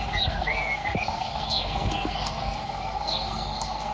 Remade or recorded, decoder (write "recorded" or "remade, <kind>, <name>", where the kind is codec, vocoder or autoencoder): remade, codec, SNAC